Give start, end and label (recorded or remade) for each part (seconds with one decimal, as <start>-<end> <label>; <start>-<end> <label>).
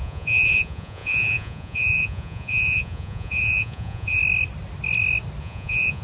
0.0-4.2 remade; 4.2-5.4 recorded; 5.4-6.0 remade